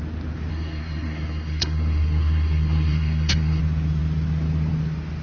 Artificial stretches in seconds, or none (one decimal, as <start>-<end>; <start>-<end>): 0.5-3.6